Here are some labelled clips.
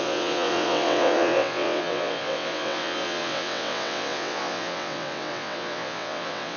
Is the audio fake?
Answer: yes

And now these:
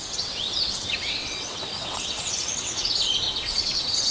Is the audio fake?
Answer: yes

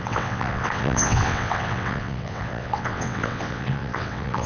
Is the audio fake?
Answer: yes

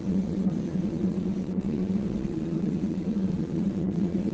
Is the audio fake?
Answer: yes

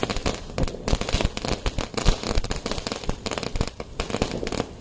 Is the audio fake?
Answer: no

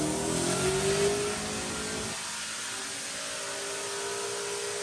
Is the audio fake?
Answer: no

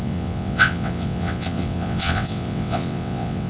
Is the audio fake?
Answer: yes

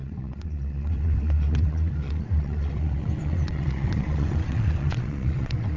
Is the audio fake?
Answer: yes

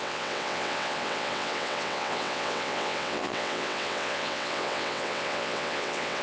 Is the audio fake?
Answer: yes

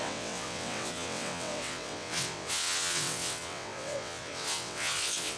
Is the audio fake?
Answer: yes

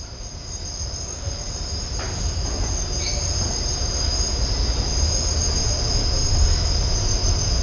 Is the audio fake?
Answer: no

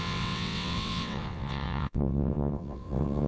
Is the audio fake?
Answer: yes